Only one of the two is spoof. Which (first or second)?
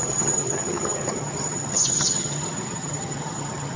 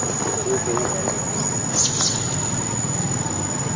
first